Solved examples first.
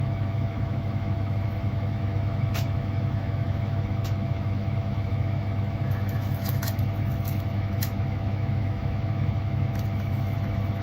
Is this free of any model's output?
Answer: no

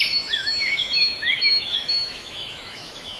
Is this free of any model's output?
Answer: no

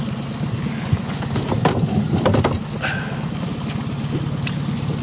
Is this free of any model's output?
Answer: yes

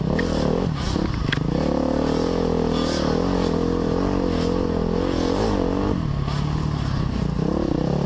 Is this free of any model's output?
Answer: yes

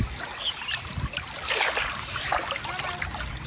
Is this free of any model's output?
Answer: yes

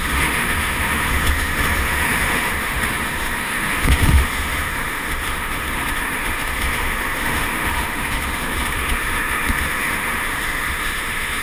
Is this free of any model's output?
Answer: no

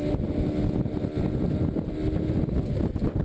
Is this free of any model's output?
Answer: yes